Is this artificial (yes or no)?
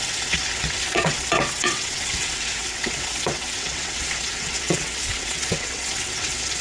yes